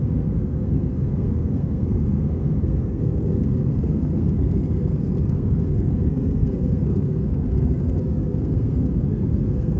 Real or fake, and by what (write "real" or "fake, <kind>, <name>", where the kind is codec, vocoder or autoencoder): fake, codec, SNAC